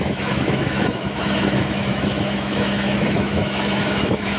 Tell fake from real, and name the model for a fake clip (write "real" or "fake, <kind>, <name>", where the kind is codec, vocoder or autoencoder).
fake, autoencoder, DAC-VAE